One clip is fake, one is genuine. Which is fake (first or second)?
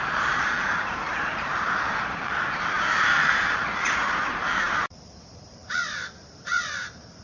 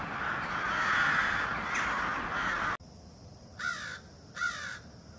first